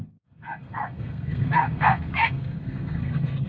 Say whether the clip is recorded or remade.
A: remade